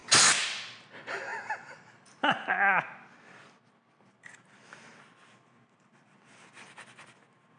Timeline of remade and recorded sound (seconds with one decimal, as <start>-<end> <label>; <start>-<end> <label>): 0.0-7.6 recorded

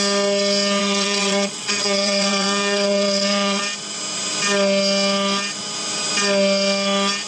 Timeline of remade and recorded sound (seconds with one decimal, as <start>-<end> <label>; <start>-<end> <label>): 0.0-0.8 recorded; 0.8-3.6 remade; 3.6-7.3 recorded

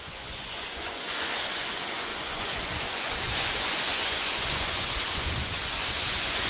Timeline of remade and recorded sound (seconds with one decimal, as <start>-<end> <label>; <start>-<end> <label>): 0.0-6.5 remade

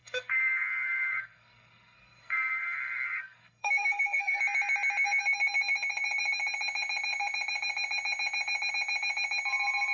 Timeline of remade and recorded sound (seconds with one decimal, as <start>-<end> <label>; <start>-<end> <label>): 0.0-4.4 remade; 4.4-9.9 recorded

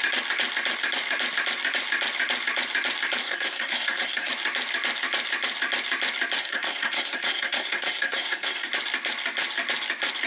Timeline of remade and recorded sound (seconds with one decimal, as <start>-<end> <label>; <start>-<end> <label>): 0.0-3.2 recorded; 3.2-4.3 remade; 4.3-6.4 recorded; 6.4-8.7 remade; 8.7-10.3 recorded